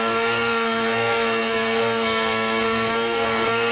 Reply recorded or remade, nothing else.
remade